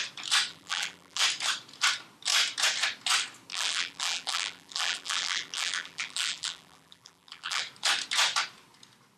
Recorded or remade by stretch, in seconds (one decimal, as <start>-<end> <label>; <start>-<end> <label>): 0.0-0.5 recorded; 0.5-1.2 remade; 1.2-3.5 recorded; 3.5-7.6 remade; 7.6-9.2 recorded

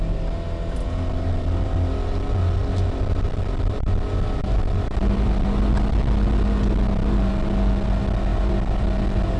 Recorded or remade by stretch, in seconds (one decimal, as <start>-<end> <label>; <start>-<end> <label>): 0.0-2.6 recorded; 2.6-5.6 remade; 5.6-8.3 recorded; 8.3-9.0 remade; 9.0-9.4 recorded

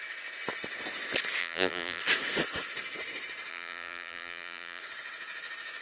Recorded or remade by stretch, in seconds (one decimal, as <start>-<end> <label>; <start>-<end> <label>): 0.0-1.4 recorded; 1.4-2.0 remade; 2.0-3.5 recorded; 3.5-4.8 remade; 4.8-5.8 recorded

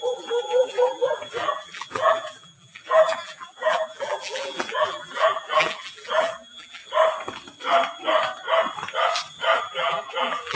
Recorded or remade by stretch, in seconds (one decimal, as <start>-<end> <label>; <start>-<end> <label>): 0.0-6.8 remade; 6.8-9.6 recorded; 9.6-10.5 remade

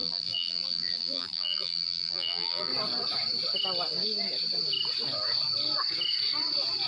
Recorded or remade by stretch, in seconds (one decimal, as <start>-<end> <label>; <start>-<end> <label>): 0.0-2.7 remade; 2.7-6.9 recorded

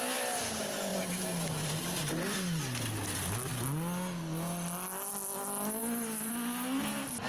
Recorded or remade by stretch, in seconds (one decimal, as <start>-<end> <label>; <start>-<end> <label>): 0.0-7.3 recorded

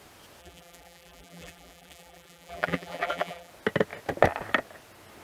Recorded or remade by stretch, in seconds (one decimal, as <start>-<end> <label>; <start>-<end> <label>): 0.0-0.4 recorded; 0.4-3.5 remade; 3.5-5.2 recorded